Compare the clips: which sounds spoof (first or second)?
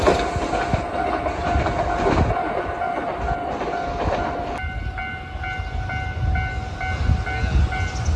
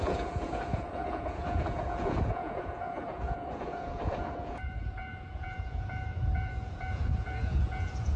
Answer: second